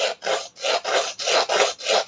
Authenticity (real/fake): real